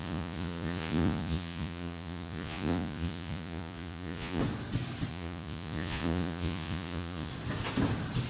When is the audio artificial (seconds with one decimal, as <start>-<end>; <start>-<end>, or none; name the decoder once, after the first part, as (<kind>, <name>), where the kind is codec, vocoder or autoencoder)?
0.0-4.4 (vocoder, Vocos); 5.1-7.3